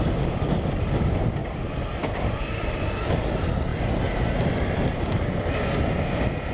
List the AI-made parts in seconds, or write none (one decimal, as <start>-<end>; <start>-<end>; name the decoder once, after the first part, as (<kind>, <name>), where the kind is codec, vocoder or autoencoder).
3.7-4.6 (vocoder, BigVGAN v2)